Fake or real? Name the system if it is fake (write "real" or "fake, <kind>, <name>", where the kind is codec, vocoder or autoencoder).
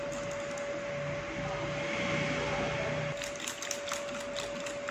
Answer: real